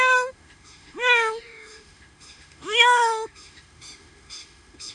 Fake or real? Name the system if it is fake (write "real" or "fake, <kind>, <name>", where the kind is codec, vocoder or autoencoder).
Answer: fake, autoencoder, DAC-VAE